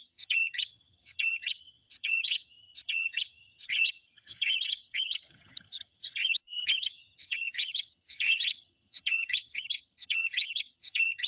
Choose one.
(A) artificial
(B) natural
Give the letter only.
A